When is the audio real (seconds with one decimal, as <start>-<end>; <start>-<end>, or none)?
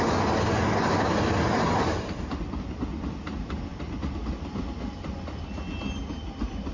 0.0-6.7